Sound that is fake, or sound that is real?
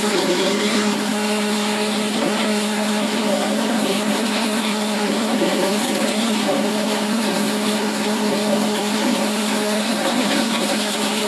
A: fake